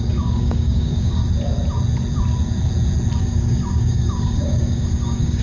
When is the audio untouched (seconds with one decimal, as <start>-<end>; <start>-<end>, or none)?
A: 1.2-3.2